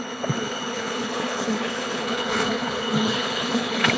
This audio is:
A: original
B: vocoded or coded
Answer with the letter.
B